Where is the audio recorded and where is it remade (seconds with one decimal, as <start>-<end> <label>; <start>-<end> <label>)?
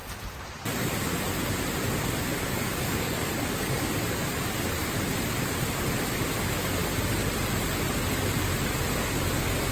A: 0.0-2.4 recorded; 2.4-3.9 remade; 3.9-9.7 recorded